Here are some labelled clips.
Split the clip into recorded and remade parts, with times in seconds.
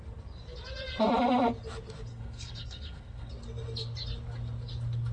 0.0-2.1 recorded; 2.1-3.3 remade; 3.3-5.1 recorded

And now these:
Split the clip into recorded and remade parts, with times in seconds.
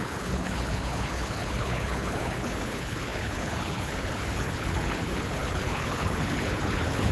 0.0-7.1 remade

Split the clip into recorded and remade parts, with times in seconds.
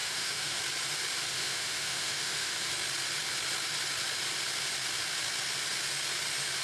0.0-0.6 remade; 0.6-1.3 recorded; 1.3-2.7 remade; 2.7-6.6 recorded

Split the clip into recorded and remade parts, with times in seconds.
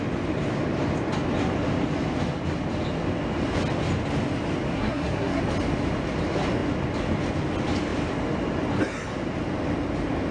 0.0-4.7 recorded; 4.7-5.4 remade; 5.4-10.3 recorded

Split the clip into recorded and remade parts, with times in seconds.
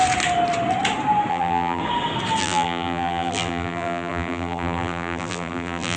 0.0-1.3 recorded; 1.3-1.8 remade; 1.8-2.4 recorded; 2.4-6.0 remade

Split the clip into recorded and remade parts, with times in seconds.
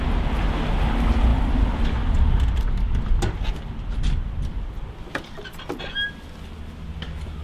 0.0-7.4 recorded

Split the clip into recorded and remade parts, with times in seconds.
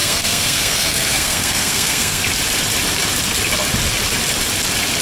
0.0-2.2 remade; 2.2-5.0 recorded